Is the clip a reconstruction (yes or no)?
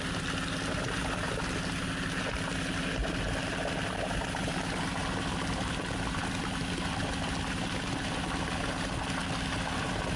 no